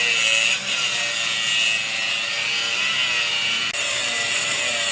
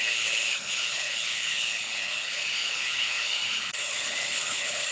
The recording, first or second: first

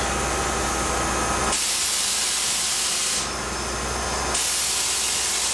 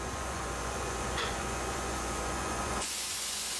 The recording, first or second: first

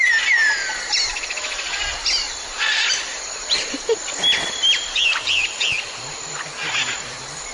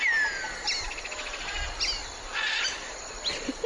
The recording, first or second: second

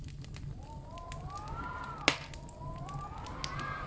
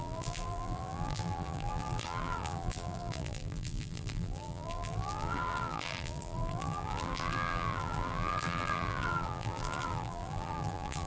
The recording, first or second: first